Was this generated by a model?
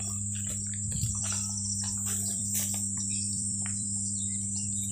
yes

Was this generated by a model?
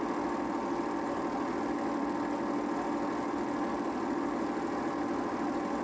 no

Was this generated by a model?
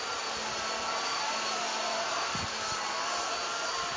no